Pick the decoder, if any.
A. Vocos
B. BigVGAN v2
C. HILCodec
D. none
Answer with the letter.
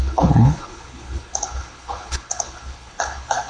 C